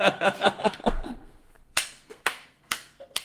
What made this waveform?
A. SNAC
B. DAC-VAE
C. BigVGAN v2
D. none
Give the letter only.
A